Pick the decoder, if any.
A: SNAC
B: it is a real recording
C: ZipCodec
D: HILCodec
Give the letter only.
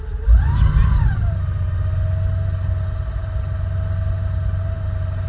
B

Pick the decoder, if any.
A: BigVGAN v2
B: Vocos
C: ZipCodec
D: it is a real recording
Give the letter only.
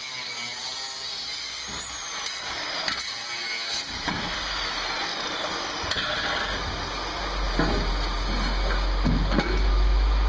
D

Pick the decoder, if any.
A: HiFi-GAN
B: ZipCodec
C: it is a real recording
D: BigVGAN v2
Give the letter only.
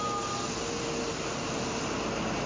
C